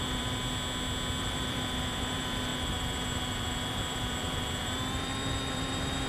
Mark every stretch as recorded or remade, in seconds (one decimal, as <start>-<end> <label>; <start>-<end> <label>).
0.0-0.4 remade; 0.4-1.2 recorded; 1.2-6.1 remade

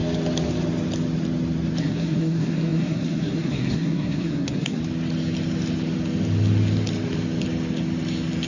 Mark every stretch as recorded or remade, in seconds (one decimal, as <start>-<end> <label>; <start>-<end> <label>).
0.0-1.8 recorded; 1.8-4.8 remade; 4.8-8.5 recorded